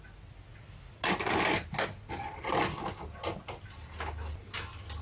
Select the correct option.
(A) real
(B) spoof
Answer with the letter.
A